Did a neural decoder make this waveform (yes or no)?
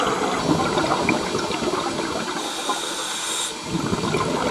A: no